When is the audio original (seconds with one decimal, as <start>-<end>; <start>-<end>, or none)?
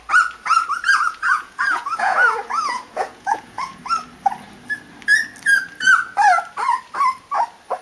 0.0-1.0; 3.8-7.8